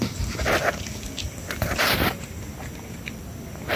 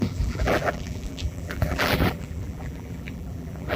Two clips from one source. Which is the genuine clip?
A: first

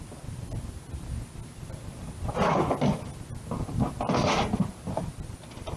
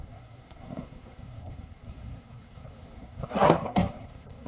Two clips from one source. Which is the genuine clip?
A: first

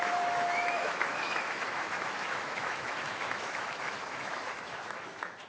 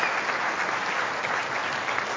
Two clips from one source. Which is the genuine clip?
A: second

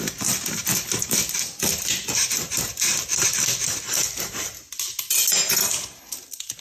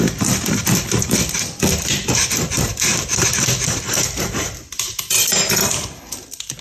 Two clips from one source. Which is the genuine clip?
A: first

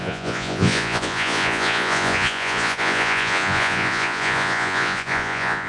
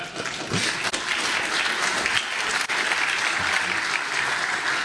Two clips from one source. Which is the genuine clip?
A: second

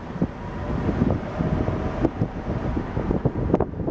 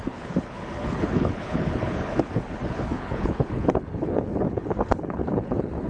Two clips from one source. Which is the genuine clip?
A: first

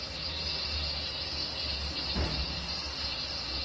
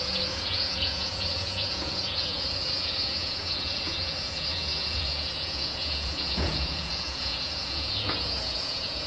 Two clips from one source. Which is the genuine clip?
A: first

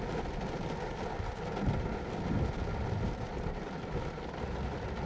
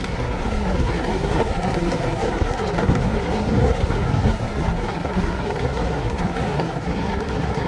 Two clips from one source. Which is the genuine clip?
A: first